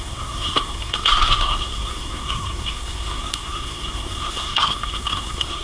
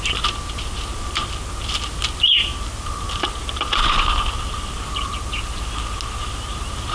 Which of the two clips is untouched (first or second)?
second